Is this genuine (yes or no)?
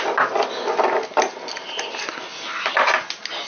yes